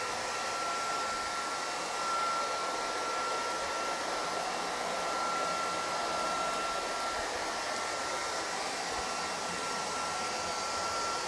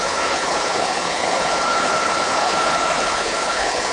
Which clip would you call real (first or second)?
first